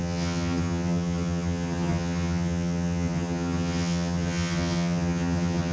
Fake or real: fake